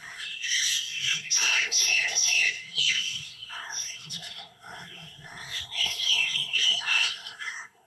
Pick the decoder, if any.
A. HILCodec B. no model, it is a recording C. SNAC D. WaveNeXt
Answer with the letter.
C